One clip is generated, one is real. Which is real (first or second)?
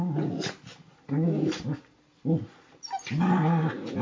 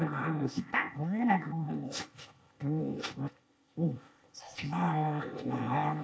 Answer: first